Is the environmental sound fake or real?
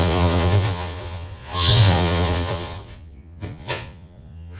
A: fake